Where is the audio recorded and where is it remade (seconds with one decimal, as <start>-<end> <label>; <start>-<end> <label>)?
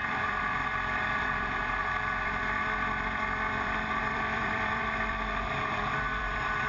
0.0-6.7 remade